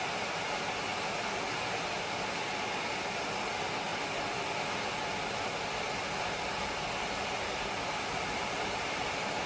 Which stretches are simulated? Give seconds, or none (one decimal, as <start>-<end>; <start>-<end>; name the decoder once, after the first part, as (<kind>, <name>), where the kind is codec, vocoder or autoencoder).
none